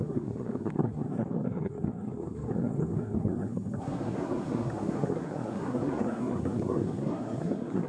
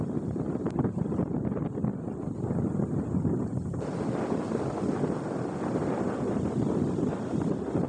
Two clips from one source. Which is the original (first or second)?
second